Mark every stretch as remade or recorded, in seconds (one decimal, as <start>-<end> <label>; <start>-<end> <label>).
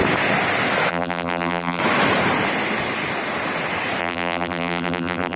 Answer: 0.0-0.9 recorded; 0.9-1.8 remade; 1.8-4.0 recorded; 4.0-5.4 remade